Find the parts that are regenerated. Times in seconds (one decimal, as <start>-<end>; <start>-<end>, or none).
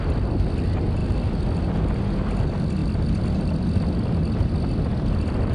none